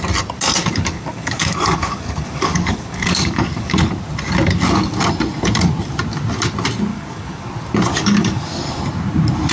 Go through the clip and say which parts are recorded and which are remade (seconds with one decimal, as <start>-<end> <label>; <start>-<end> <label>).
0.0-0.6 recorded; 0.6-3.8 remade; 3.8-6.9 recorded; 6.9-7.5 remade; 7.5-7.9 recorded; 7.9-8.8 remade; 8.8-9.5 recorded